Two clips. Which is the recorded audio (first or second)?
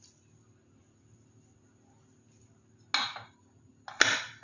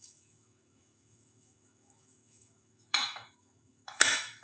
first